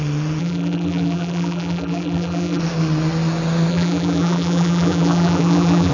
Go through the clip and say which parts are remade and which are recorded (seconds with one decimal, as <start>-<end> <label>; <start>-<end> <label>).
0.0-0.4 recorded; 0.4-2.6 remade; 2.6-3.7 recorded; 3.7-5.9 remade